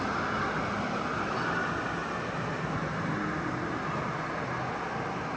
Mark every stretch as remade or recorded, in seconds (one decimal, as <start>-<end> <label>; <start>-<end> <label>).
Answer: 0.0-5.4 recorded

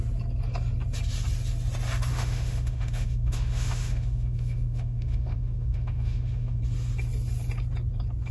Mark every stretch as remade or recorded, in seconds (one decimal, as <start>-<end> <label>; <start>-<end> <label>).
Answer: 0.0-2.1 recorded; 2.1-6.6 remade; 6.6-8.3 recorded